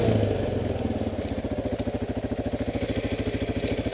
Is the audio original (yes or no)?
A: yes